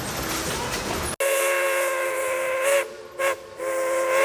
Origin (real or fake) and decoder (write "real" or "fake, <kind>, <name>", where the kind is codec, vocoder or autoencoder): real